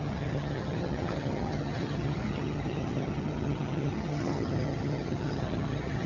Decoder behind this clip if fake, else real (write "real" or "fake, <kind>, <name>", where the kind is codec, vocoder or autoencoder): fake, vocoder, HiFi-GAN